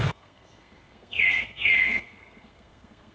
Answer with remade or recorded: remade